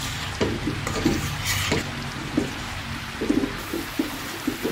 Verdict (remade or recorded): recorded